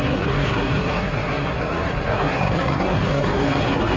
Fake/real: fake